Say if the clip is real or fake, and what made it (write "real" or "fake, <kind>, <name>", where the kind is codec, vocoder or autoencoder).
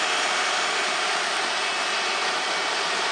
real